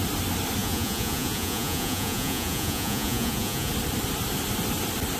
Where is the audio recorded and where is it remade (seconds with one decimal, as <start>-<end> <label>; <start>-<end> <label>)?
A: 0.0-0.6 recorded; 0.6-3.7 remade; 3.7-5.2 recorded